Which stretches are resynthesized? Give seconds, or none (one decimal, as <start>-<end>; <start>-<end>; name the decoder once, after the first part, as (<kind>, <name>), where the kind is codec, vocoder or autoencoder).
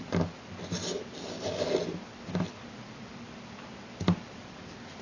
none